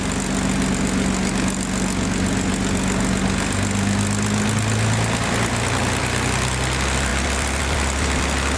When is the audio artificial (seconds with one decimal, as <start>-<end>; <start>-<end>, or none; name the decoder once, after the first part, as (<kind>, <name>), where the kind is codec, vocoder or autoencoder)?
none